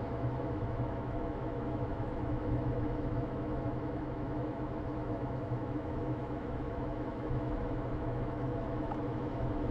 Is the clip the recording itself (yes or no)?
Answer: no